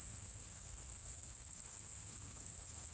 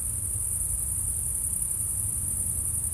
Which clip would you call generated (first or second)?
first